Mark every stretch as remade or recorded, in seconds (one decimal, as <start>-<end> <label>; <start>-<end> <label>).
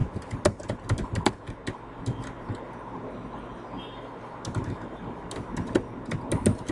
0.0-6.7 recorded